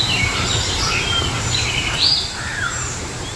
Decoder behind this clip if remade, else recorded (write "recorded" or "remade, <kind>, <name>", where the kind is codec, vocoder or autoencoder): remade, vocoder, BigVGAN v2